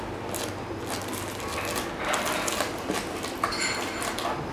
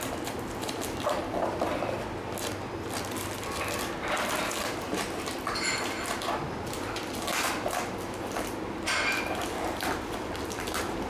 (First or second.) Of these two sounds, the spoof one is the second